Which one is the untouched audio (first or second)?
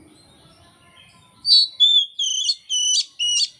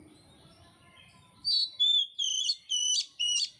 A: first